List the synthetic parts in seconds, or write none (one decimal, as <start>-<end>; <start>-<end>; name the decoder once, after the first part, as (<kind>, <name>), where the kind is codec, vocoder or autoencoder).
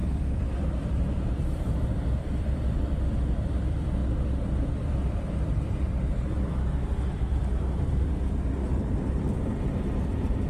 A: 0.0-4.0 (vocoder, BigVGAN v2); 4.7-10.5